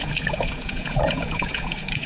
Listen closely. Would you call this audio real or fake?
fake